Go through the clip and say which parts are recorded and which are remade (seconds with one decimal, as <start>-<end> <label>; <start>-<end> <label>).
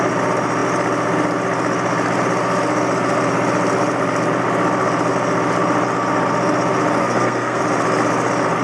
0.0-7.0 recorded; 7.0-7.6 remade; 7.6-8.6 recorded